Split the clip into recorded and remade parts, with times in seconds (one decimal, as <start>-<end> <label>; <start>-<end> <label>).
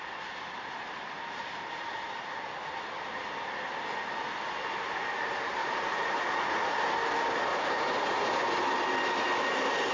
0.0-5.6 recorded; 5.6-6.7 remade; 6.7-7.5 recorded; 7.5-8.3 remade; 8.3-9.9 recorded